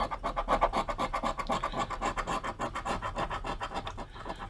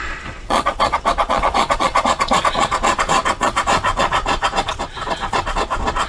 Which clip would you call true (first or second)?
first